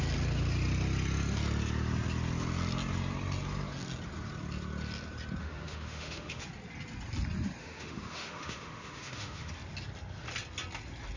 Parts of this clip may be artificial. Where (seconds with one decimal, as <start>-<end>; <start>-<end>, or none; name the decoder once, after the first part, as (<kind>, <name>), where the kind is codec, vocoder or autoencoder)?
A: 5.4-6.4 (autoencoder, DAC-VAE); 7.6-9.5